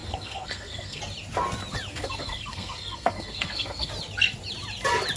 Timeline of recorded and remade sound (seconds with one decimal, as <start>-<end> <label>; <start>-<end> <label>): 0.0-1.0 remade; 1.0-1.9 recorded; 1.9-3.9 remade; 3.9-5.2 recorded